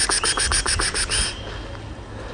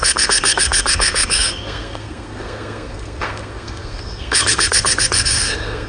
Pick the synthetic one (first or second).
second